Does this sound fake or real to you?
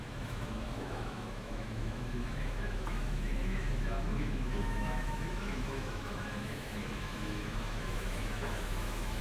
fake